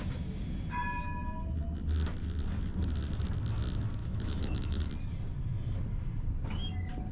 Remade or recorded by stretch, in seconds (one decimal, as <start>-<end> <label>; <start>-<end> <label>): 0.0-4.0 recorded; 4.0-4.9 remade; 4.9-7.1 recorded